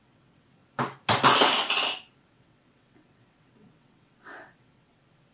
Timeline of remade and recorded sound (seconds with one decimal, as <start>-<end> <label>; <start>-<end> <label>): 0.0-0.6 remade; 0.6-2.3 recorded; 2.3-5.3 remade